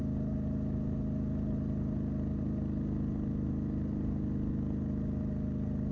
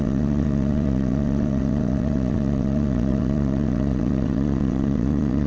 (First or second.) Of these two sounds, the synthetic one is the second